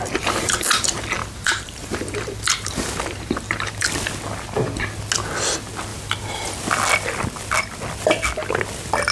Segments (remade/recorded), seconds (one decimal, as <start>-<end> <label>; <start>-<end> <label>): 0.0-1.2 recorded; 1.2-3.8 remade; 3.8-5.9 recorded; 5.9-6.4 remade; 6.4-9.1 recorded